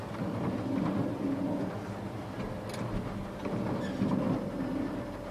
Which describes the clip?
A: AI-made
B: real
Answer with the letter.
B